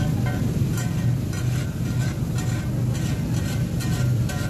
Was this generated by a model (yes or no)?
yes